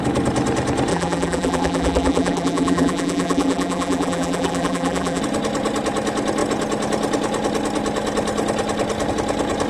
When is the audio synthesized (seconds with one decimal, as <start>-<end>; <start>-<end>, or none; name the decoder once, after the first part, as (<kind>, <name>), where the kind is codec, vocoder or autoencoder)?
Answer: 0.9-5.2 (vocoder, BigVGAN v2)

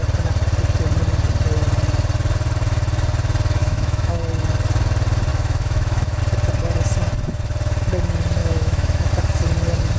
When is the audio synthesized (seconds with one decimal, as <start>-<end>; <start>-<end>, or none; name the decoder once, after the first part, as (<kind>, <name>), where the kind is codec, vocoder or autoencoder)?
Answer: 3.6-4.2 (autoencoder, DAC-VAE); 5.3-6.2; 8.4-9.1

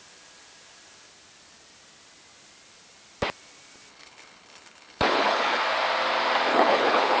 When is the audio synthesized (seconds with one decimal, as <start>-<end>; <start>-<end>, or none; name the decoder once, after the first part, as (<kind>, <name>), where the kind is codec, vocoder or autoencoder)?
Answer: 3.9-5.6 (codec, HILCodec); 6.5-7.2

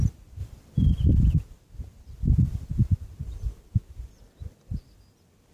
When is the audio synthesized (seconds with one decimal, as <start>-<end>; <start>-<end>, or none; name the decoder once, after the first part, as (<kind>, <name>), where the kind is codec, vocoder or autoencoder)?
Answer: 0.4-0.9 (vocoder, BigVGAN v2); 2.5-3.7

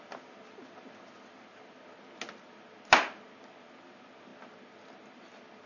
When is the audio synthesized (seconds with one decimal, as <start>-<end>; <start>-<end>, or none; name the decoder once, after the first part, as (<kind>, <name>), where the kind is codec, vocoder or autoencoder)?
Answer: none

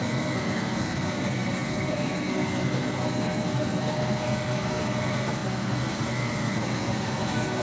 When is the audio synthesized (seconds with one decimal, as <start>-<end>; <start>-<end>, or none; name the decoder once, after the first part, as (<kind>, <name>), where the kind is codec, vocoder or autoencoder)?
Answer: 0.0-7.6 (codec, SNAC)

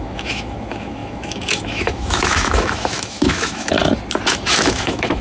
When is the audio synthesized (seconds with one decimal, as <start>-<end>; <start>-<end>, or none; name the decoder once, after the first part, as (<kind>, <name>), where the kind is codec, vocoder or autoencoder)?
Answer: 0.0-3.8 (autoencoder, DAC-VAE); 4.5-5.2

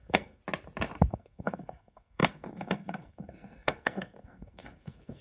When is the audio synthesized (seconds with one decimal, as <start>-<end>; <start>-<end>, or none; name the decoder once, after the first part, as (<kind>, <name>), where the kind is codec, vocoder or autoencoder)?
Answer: 0.0-0.4 (codec, SNAC); 1.1-5.2